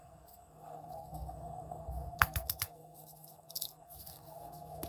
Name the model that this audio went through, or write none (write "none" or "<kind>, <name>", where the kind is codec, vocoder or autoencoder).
codec, SNAC